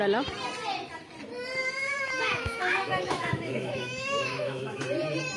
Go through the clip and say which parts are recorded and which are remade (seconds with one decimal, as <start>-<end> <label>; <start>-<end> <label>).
0.0-1.6 recorded; 1.6-4.8 remade; 4.8-5.4 recorded